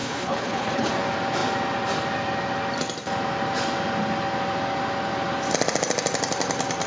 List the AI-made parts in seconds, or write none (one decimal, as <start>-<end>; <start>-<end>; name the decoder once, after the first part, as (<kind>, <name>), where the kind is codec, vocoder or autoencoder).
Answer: 0.0-0.9 (codec, HILCodec)